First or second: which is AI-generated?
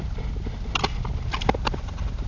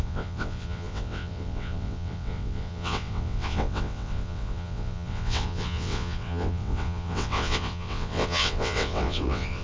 second